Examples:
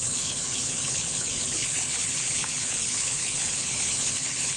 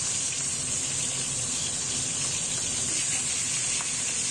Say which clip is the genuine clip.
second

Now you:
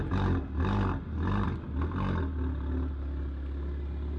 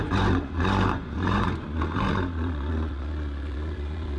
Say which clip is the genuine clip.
first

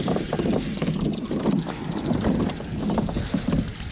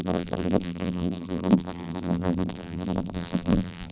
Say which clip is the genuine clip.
first